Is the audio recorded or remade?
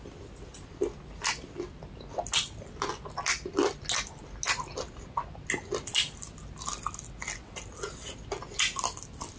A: recorded